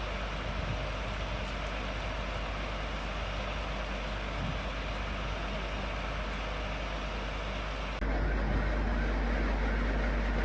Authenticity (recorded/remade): recorded